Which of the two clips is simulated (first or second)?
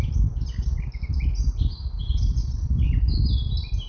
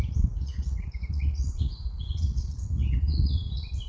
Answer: second